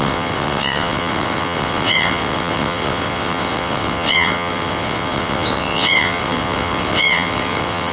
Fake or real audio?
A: fake